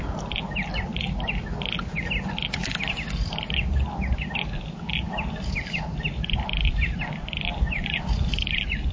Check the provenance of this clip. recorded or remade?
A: recorded